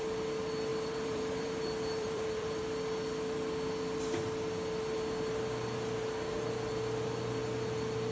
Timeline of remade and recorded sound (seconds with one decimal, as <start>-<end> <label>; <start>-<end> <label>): 0.0-0.7 recorded; 0.7-2.6 remade; 2.6-8.1 recorded